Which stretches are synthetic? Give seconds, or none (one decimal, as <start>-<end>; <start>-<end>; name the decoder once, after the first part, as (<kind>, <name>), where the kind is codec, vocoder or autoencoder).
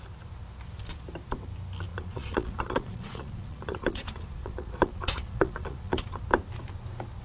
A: 1.9-6.2 (vocoder, Vocos)